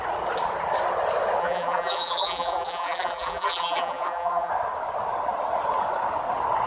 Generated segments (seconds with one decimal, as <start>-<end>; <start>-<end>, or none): 1.4-4.5